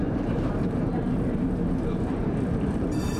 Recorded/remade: remade